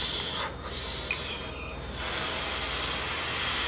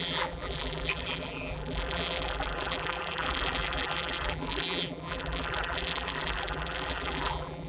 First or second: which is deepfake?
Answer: second